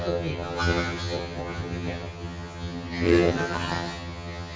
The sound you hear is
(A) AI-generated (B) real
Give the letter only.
A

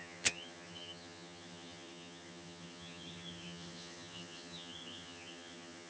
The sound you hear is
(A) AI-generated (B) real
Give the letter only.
A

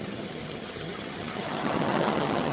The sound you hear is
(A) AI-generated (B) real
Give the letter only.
A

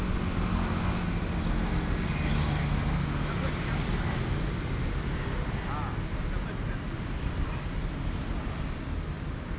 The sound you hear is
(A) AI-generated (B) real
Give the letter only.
B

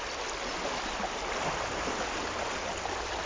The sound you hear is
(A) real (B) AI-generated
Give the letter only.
A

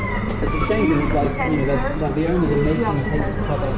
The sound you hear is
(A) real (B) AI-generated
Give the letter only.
A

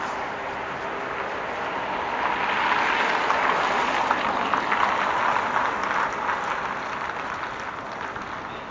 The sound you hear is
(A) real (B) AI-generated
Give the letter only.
A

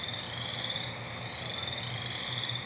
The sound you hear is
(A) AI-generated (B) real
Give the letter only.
B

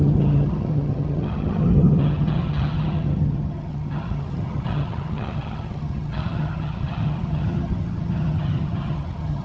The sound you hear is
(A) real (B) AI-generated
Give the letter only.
B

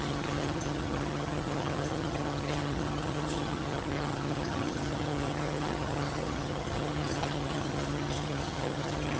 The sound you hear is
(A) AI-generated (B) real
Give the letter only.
A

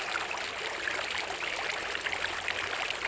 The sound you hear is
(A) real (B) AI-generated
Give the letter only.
A